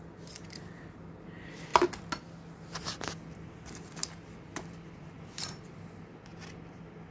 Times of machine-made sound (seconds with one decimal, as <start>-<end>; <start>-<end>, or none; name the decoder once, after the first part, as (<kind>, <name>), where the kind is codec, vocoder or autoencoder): none